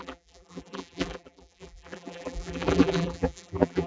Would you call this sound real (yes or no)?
no